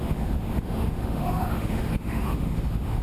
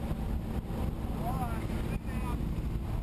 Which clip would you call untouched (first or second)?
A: second